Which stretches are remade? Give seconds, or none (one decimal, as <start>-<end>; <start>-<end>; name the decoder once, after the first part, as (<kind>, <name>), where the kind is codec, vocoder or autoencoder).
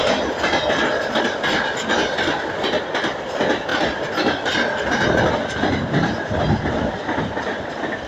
none